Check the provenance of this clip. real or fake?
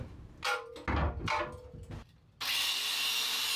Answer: real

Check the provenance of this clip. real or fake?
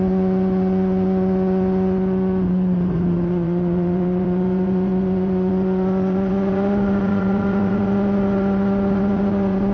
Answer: fake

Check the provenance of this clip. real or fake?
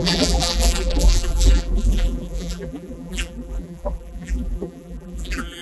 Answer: fake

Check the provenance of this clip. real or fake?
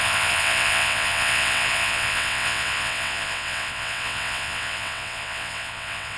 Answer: fake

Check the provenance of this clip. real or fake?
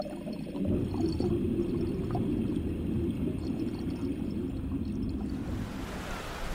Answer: real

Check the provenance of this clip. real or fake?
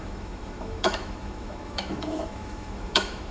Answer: fake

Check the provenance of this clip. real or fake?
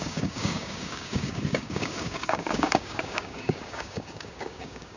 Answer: fake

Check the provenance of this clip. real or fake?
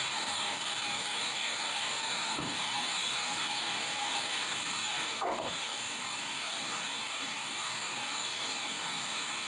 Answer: fake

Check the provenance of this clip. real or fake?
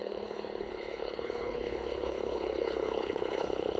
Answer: fake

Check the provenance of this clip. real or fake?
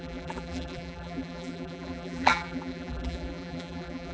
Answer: fake